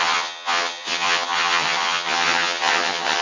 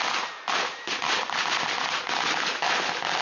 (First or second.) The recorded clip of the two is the second